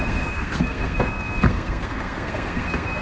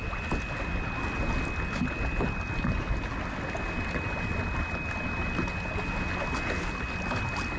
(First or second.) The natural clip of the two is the second